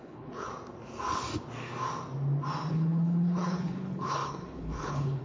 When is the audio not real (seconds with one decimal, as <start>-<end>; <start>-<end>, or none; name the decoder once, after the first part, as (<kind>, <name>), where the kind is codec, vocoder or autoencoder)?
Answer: 0.0-0.5 (codec, HILCodec); 2.7-5.2